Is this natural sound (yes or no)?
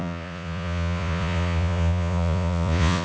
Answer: no